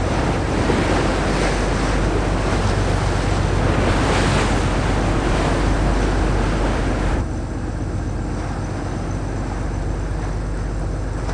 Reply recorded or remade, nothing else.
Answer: recorded